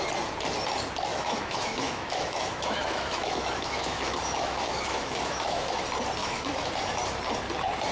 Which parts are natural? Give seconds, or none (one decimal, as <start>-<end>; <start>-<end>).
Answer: 0.0-1.1; 5.8-6.2; 6.7-7.9